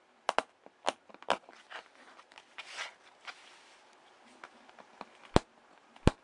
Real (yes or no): yes